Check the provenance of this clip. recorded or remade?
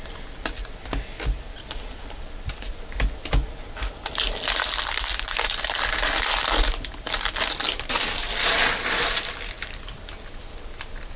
recorded